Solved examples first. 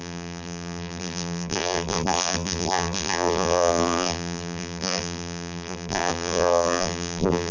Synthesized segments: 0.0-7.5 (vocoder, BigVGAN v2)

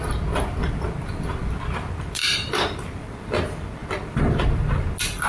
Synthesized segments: 2.2-3.0 (vocoder, BigVGAN v2)

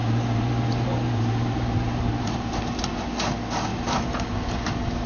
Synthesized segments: 0.0-2.5 (vocoder, BigVGAN v2); 3.7-4.4

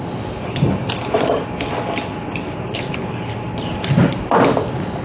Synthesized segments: 2.1-5.0 (vocoder, BigVGAN v2)

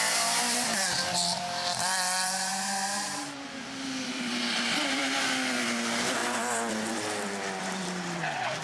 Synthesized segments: 0.0-6.2 (vocoder, BigVGAN v2); 6.7-8.6

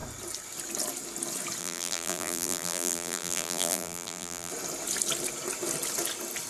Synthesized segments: 1.6-4.5 (vocoder, BigVGAN v2)

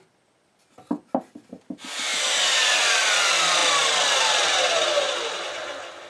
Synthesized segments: none